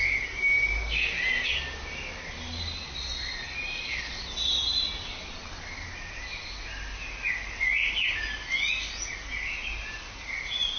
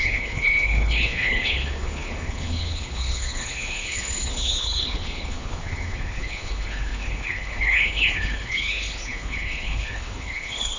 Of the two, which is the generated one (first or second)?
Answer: second